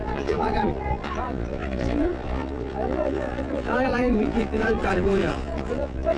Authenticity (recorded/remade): remade